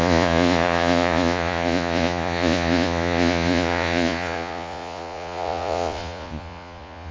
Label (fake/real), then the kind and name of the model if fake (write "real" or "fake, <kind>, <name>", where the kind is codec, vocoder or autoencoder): fake, vocoder, Vocos